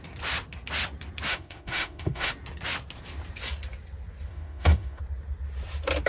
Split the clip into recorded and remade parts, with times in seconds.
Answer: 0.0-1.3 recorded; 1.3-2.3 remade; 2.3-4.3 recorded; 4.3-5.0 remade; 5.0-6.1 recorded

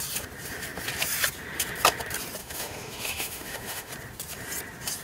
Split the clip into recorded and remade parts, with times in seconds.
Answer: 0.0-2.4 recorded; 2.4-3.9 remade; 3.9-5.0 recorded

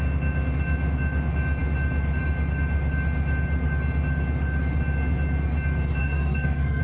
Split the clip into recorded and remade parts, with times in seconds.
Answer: 0.0-6.0 recorded; 6.0-6.8 remade